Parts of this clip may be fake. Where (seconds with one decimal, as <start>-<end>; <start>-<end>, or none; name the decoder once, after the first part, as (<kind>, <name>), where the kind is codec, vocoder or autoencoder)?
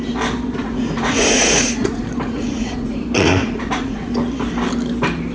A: 0.6-3.0 (vocoder, Vocos); 3.4-4.1